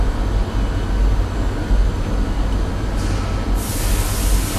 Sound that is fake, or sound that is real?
real